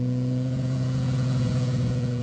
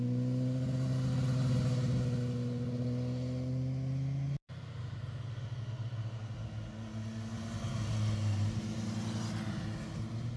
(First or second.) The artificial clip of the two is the first